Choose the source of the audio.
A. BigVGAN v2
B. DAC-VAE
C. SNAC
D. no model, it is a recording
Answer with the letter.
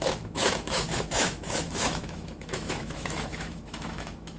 B